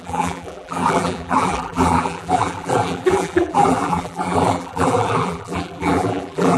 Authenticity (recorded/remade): remade